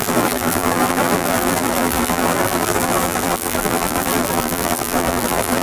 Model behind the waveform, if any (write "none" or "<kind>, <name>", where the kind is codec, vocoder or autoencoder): vocoder, BigVGAN v2